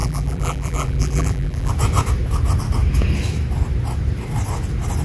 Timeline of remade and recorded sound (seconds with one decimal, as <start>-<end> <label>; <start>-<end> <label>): 0.0-1.7 remade; 1.7-5.0 recorded